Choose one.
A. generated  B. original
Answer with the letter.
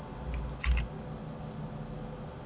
B